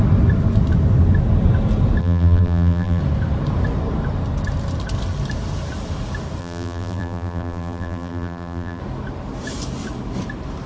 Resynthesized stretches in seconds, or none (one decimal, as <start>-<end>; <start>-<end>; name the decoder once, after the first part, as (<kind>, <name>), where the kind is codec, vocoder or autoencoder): 2.0-3.0 (vocoder, BigVGAN v2); 6.4-8.8